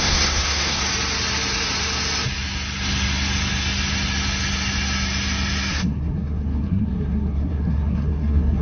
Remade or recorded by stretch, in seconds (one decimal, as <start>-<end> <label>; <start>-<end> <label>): 0.0-0.8 remade; 0.8-5.7 recorded; 5.7-8.6 remade